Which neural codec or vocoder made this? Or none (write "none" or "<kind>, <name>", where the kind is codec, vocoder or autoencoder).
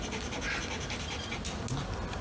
none